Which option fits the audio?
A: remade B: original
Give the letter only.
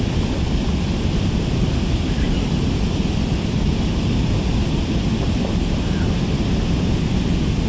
B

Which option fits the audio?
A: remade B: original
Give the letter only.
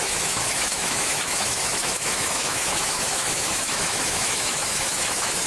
A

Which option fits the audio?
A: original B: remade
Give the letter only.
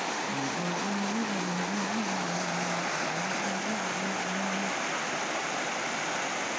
A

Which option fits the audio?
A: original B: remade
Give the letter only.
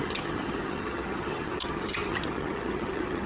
B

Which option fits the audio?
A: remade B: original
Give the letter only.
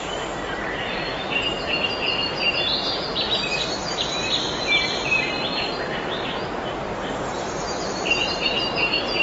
A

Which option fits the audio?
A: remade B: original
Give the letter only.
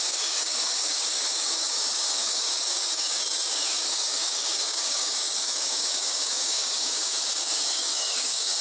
A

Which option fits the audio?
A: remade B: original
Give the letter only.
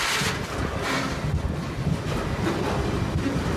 B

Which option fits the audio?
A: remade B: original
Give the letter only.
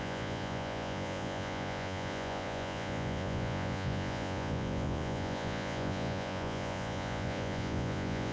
A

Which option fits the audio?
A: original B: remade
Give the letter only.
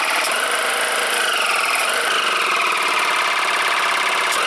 A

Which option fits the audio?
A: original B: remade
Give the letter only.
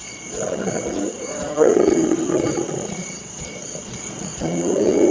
B